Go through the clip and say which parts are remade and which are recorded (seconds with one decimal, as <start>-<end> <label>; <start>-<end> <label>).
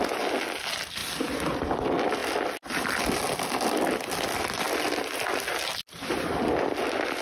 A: 0.0-7.2 recorded